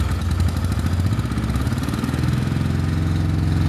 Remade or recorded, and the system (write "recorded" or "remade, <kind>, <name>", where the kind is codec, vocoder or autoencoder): recorded